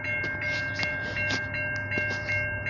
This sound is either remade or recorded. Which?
recorded